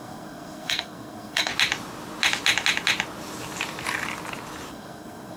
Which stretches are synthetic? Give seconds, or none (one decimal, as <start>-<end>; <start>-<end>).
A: 0.0-1.5; 4.7-5.4